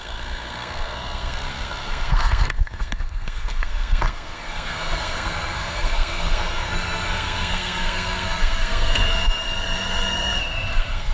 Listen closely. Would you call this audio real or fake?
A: fake